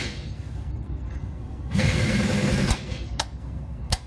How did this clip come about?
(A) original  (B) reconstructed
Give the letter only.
B